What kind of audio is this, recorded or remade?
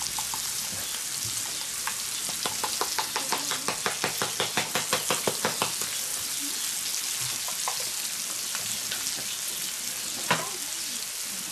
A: recorded